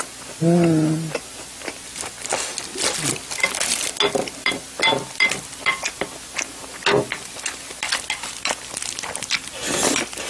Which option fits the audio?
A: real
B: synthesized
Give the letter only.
A